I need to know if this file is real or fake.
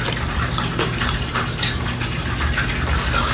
real